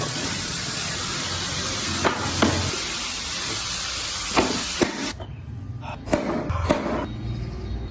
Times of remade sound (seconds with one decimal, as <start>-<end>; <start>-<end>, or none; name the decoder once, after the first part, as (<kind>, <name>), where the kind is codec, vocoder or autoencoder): 0.0-0.9 (vocoder, Vocos)